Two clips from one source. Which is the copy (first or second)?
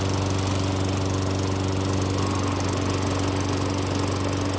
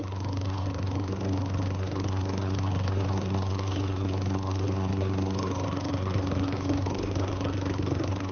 second